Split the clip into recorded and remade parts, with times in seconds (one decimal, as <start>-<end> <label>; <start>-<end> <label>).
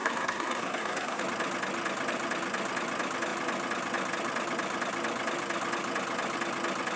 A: 0.0-1.2 remade; 1.2-7.0 recorded